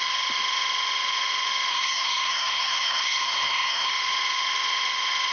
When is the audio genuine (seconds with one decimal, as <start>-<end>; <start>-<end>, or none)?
0.0-1.7; 3.9-5.3